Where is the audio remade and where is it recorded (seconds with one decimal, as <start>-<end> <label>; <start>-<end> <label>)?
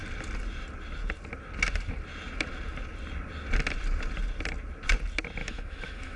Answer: 0.0-5.4 recorded; 5.4-6.2 remade